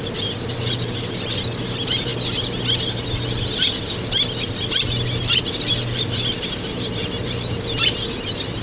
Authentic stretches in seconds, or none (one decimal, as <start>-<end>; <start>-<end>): 0.0-8.6